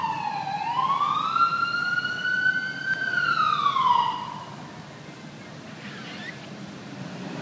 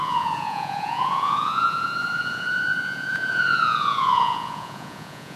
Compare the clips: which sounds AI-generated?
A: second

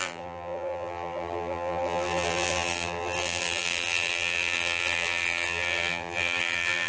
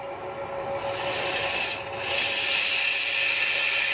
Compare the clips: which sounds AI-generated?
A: first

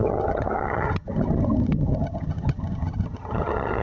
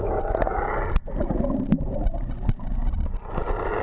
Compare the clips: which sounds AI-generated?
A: first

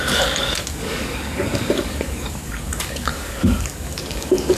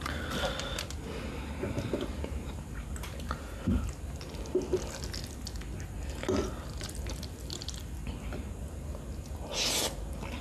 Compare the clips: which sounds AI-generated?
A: first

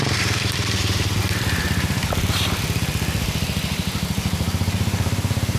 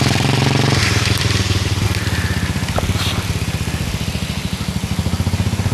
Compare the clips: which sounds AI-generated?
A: first